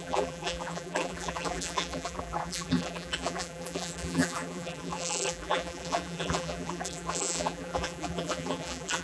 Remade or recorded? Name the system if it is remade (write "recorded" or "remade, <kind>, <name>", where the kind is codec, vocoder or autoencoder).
remade, vocoder, BigVGAN v2